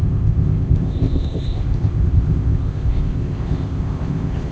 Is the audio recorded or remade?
remade